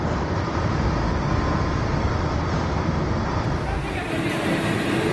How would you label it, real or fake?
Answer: real